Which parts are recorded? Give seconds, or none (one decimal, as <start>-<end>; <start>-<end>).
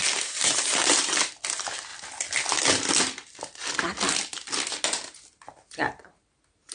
1.2-6.7